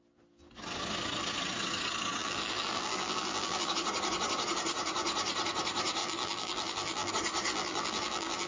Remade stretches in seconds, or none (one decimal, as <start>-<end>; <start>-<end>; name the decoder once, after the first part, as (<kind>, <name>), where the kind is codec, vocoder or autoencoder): 2.2-3.7 (vocoder, BigVGAN v2); 6.0-7.1; 7.5-8.5